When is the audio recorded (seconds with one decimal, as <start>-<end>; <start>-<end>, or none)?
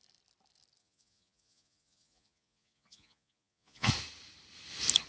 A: 0.0-0.8; 3.9-5.1